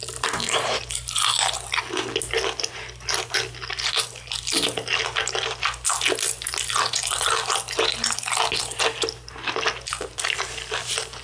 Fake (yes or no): no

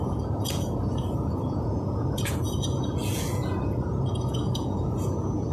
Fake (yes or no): yes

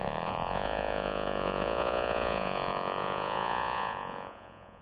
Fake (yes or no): yes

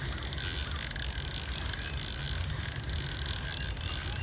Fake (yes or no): no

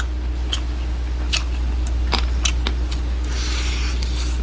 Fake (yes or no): no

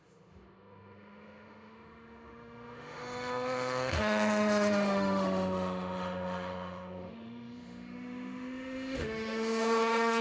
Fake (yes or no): yes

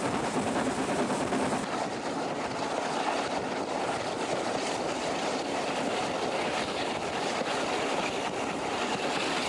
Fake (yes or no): no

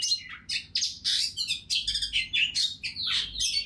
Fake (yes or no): no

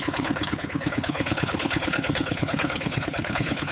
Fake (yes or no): yes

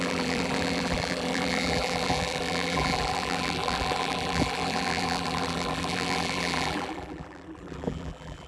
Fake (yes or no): yes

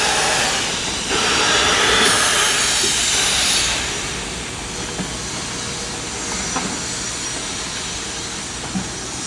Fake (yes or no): no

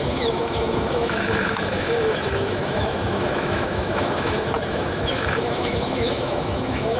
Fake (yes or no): yes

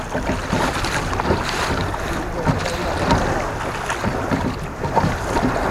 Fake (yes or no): no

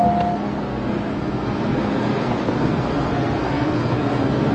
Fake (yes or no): yes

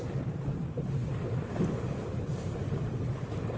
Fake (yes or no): no